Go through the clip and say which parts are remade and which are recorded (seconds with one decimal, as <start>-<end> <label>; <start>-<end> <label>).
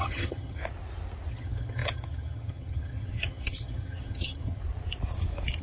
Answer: 0.0-0.6 remade; 0.6-1.3 recorded; 1.3-4.6 remade; 4.6-5.6 recorded